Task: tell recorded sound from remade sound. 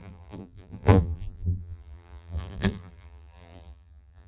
remade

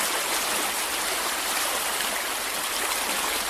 recorded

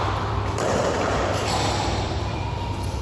remade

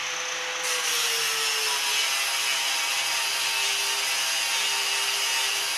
recorded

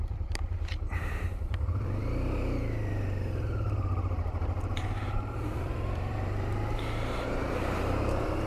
remade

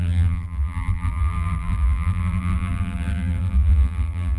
remade